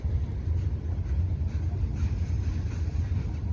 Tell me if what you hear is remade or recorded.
recorded